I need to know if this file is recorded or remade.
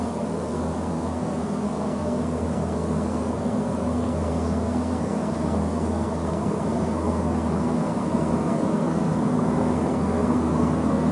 remade